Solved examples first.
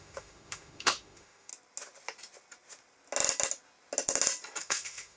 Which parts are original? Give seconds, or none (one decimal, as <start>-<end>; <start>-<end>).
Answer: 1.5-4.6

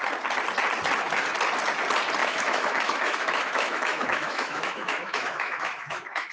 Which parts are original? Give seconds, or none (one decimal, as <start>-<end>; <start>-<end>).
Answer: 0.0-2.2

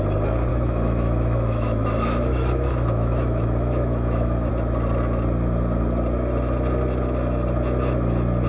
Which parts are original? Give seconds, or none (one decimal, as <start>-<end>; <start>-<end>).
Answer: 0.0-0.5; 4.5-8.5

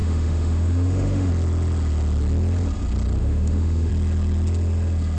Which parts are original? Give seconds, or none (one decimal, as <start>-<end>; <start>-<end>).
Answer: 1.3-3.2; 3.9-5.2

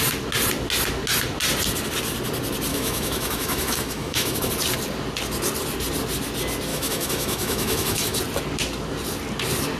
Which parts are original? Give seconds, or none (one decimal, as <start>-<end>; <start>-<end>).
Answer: 0.0-2.7; 4.5-6.7; 8.2-9.8